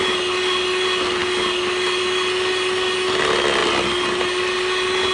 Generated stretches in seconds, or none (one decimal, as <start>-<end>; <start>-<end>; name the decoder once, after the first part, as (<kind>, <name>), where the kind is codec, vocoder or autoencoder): none